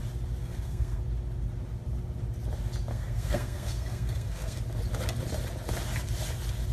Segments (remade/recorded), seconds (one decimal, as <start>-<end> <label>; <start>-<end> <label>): 0.0-0.4 recorded; 0.4-1.0 remade; 1.0-2.9 recorded; 2.9-4.6 remade; 4.6-6.7 recorded

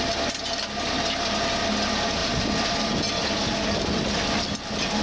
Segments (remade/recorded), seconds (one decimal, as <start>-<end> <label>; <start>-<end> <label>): 0.0-5.0 recorded

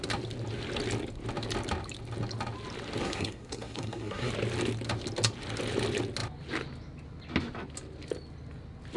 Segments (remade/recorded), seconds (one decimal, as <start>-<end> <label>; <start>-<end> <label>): 0.0-3.0 recorded; 3.0-4.3 remade; 4.3-9.0 recorded

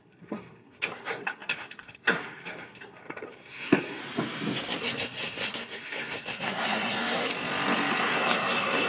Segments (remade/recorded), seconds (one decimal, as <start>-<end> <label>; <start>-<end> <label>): 0.0-4.0 remade; 4.0-4.8 recorded; 4.8-7.3 remade; 7.3-8.0 recorded; 8.0-8.9 remade

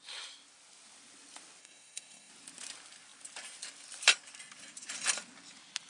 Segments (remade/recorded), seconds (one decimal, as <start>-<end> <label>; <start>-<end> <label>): 0.0-1.6 recorded; 1.6-2.3 remade; 2.3-5.9 recorded

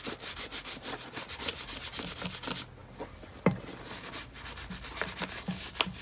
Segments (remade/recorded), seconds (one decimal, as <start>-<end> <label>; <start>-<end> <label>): 0.0-6.0 recorded

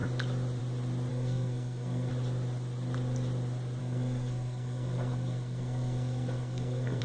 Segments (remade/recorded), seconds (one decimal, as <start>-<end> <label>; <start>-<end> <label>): 0.0-1.1 recorded; 1.1-2.1 remade; 2.1-3.8 recorded; 3.8-7.0 remade